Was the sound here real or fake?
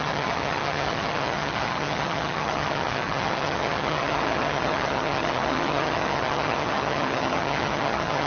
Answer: fake